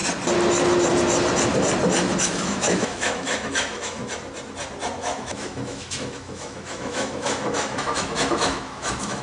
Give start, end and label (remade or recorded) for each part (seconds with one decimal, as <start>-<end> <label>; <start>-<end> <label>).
0.0-2.2 recorded; 2.2-4.0 remade; 4.0-5.0 recorded; 5.0-9.2 remade